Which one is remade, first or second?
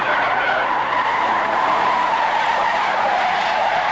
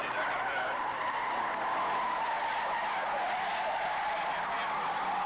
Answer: first